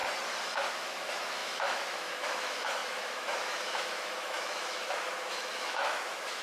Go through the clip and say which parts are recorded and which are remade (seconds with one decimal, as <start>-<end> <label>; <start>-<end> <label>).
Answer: 0.0-0.7 recorded; 0.7-6.4 remade